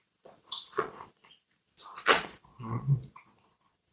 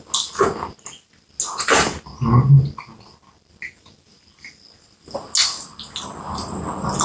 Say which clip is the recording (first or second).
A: second